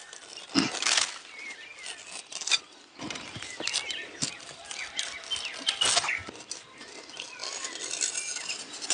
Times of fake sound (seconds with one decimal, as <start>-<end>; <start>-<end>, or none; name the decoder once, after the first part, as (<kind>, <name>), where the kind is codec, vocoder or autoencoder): none